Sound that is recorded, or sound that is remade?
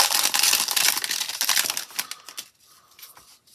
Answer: recorded